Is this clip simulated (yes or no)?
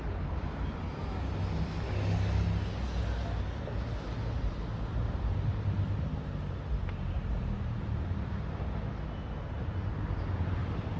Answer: no